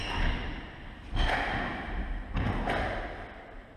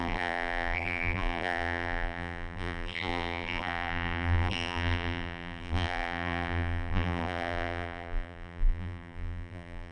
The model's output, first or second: second